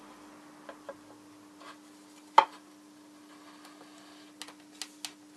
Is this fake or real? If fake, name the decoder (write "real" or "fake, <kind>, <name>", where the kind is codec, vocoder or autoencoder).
real